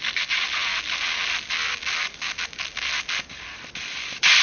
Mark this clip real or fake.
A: real